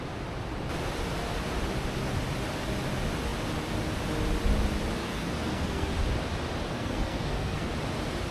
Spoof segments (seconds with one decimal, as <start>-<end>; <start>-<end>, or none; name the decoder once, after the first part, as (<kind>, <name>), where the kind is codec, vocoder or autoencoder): 5.0-5.9 (codec, SNAC); 6.7-7.7